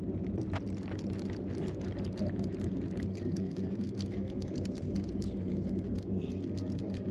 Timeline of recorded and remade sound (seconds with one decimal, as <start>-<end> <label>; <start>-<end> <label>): 0.0-3.1 recorded; 3.1-7.1 remade

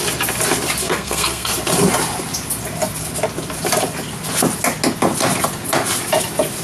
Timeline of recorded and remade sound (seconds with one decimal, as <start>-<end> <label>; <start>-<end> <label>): 0.0-0.8 recorded; 0.8-1.5 remade; 1.5-6.6 recorded